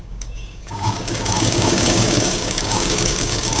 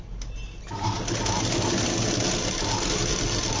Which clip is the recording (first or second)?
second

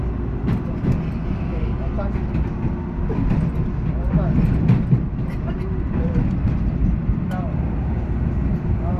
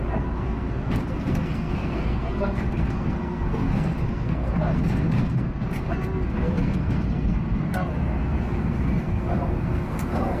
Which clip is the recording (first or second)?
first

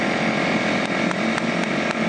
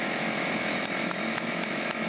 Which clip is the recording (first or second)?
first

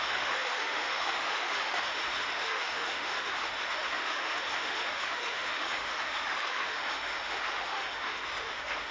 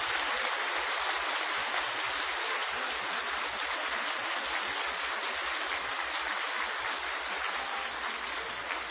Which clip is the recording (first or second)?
second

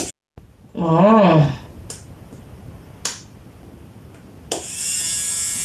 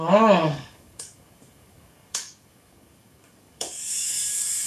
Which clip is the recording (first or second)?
first